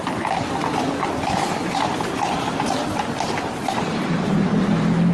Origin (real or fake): real